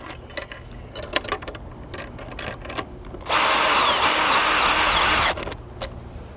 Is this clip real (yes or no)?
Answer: yes